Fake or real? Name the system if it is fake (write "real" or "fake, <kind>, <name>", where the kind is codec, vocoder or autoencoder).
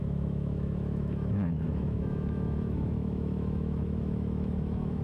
fake, autoencoder, DAC-VAE